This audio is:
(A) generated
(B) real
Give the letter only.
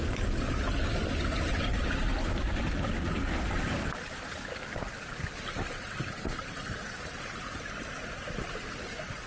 B